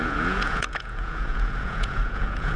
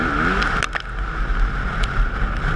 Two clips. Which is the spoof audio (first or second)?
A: first